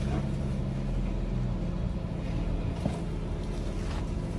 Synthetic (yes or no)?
no